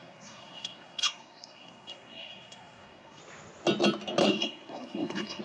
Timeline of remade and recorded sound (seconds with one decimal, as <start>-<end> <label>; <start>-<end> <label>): 0.0-3.2 remade; 3.2-4.2 recorded; 4.2-5.4 remade